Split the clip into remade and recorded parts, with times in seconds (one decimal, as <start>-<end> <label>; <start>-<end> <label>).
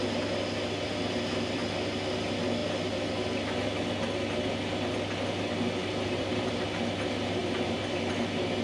0.0-5.8 recorded; 5.8-6.5 remade; 6.5-7.4 recorded; 7.4-8.1 remade; 8.1-8.6 recorded